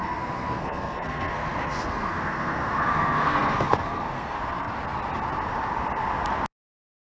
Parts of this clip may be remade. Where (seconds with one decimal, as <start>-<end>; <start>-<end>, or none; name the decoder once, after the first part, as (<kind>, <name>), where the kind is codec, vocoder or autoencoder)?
0.0-4.7 (codec, SNAC)